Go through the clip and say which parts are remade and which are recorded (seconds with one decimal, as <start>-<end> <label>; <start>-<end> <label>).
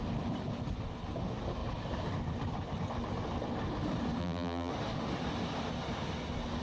0.0-4.2 recorded; 4.2-4.7 remade; 4.7-6.6 recorded